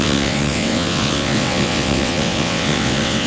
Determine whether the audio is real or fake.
fake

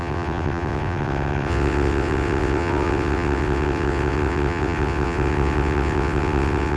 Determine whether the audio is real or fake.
fake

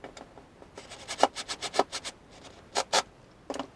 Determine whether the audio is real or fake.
real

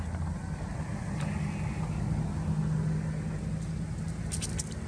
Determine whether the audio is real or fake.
real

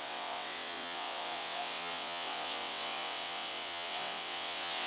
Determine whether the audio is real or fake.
fake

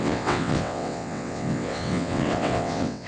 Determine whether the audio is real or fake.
fake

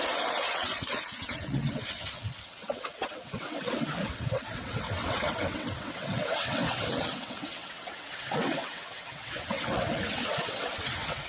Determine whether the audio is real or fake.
fake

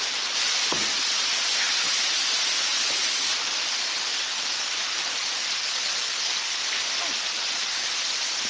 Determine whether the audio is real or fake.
real